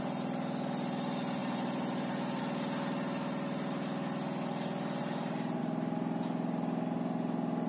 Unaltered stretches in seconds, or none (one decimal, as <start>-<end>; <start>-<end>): 0.0-1.4; 2.4-5.0; 5.6-7.7